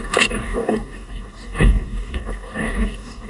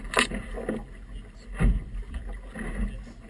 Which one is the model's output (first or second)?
first